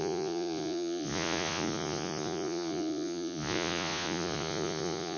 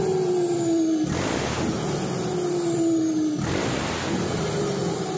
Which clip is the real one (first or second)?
second